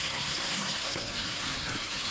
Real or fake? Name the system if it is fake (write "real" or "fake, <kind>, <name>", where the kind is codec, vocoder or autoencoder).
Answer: fake, codec, SNAC